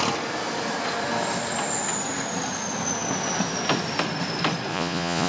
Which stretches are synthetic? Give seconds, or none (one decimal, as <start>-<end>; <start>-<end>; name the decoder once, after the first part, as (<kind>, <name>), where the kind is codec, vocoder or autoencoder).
4.7-5.3 (vocoder, Vocos)

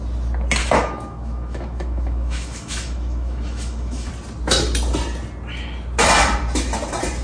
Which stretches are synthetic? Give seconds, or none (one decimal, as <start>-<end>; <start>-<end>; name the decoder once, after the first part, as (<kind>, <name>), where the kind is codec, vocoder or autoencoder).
0.6-4.1 (autoencoder, DAC-VAE)

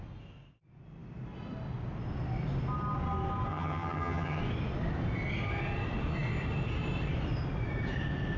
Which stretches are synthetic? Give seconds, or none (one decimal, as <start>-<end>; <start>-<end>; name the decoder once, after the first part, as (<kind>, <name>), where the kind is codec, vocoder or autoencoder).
3.5-4.4 (vocoder, HiFi-GAN)

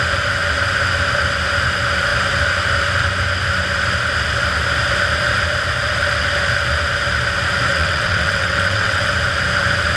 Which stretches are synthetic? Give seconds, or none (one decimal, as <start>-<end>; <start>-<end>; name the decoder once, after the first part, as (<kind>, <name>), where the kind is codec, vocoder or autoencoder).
7.7-9.1 (vocoder, WaveNeXt)

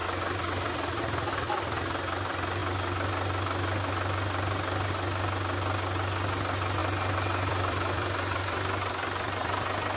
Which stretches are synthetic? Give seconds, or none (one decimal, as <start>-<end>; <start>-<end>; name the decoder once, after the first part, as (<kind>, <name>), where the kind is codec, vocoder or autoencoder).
0.0-1.0 (vocoder, BigVGAN v2); 6.8-10.0

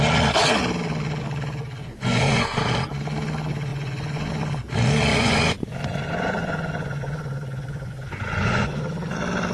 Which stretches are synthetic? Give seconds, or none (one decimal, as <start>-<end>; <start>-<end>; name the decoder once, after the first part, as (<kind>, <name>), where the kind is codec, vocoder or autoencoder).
1.8-2.7 (vocoder, Vocos); 3.7-4.3; 5.1-8.8

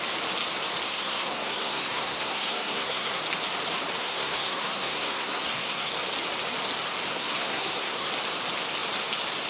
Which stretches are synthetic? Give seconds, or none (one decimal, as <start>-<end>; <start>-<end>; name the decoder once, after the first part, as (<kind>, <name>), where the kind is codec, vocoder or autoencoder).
0.9-3.2 (codec, SNAC); 4.0-5.9; 7.1-8.1

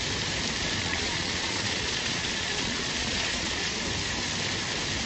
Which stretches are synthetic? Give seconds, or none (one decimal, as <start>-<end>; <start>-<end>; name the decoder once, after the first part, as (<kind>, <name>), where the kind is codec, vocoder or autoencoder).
0.8-3.7 (vocoder, Vocos)